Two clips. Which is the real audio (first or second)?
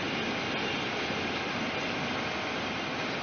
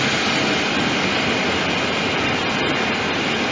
second